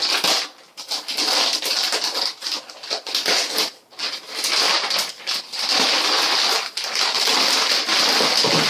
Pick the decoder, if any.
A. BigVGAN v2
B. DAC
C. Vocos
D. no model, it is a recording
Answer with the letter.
D